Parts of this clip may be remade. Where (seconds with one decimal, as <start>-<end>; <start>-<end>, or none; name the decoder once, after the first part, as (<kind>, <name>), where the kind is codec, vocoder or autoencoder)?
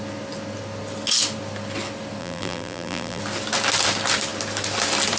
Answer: 2.2-3.2 (vocoder, BigVGAN v2)